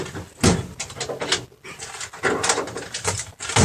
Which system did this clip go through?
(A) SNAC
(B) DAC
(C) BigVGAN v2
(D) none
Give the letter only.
D